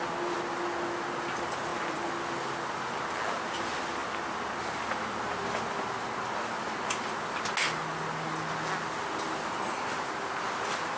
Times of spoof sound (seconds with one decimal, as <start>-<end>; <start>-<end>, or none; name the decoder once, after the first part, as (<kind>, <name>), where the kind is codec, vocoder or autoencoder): none